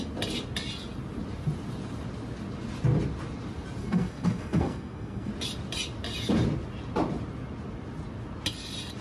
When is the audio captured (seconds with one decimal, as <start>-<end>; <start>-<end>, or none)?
0.0-3.8; 5.3-9.0

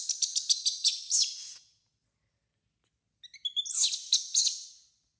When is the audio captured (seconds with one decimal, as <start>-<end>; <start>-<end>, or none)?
0.0-5.2

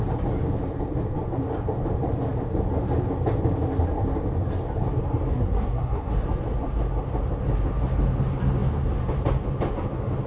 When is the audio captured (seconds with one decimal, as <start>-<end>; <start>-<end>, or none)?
0.0-5.3; 6.1-10.3

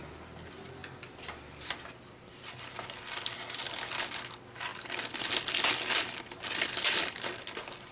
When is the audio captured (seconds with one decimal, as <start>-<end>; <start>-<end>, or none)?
0.0-7.9